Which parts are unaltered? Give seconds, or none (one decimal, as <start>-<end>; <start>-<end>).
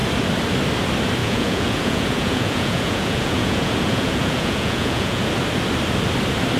0.0-1.2; 5.2-6.6